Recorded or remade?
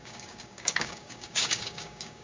remade